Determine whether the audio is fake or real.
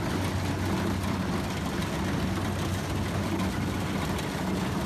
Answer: real